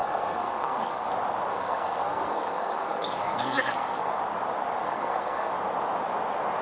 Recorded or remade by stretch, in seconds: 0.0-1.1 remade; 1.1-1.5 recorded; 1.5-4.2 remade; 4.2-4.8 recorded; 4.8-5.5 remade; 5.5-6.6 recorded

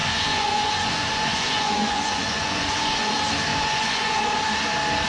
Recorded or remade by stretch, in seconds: 0.0-3.1 remade; 3.1-3.5 recorded; 3.5-4.2 remade; 4.2-5.1 recorded

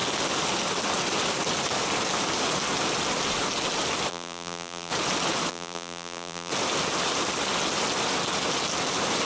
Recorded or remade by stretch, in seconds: 0.0-4.1 recorded; 4.1-4.9 remade; 4.9-5.5 recorded; 5.5-6.5 remade; 6.5-9.2 recorded